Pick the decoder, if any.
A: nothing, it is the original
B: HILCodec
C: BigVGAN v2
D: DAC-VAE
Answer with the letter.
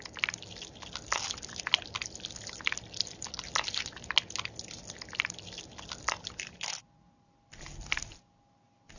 A